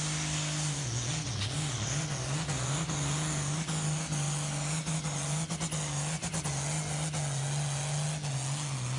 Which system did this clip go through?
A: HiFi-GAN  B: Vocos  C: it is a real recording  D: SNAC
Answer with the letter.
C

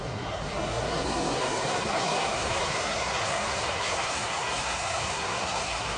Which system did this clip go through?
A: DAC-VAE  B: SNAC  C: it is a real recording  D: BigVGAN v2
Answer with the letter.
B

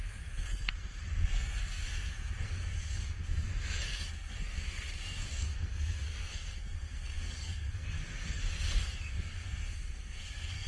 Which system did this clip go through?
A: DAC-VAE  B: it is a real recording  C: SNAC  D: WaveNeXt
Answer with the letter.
C